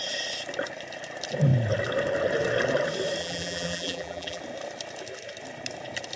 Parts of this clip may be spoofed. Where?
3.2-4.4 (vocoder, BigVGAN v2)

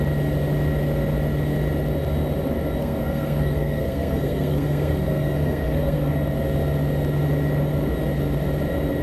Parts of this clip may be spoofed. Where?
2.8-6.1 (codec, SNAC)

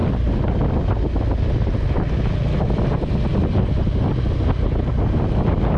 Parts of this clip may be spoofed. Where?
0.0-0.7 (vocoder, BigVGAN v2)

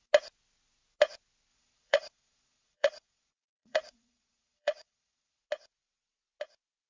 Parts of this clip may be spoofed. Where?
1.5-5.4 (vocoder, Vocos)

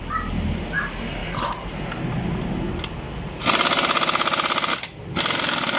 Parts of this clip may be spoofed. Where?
none

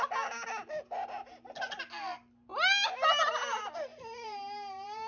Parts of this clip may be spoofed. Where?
3.9-5.1 (vocoder, BigVGAN v2)

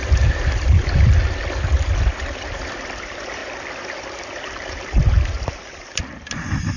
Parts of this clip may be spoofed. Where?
none

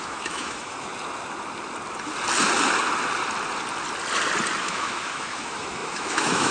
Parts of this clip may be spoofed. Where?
0.0-0.9 (autoencoder, DAC-VAE); 4.6-6.5